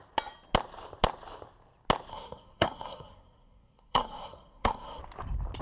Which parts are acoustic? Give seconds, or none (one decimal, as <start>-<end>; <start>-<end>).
0.0-2.1; 5.0-5.6